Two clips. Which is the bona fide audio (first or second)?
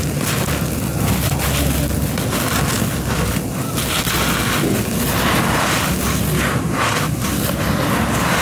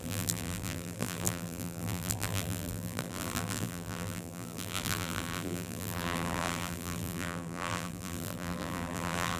first